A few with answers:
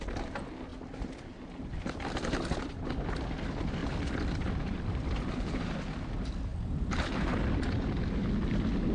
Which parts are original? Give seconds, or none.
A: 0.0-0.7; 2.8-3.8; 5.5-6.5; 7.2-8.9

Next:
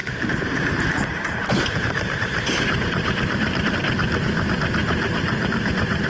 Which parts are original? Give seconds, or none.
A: 3.7-6.1